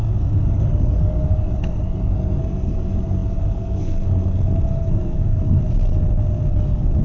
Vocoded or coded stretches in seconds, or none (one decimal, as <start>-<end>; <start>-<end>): 0.0-5.6; 6.5-7.0